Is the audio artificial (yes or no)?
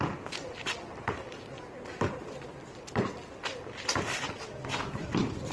no